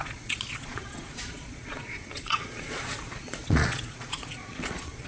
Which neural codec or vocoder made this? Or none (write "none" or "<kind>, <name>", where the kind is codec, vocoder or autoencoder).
vocoder, Vocos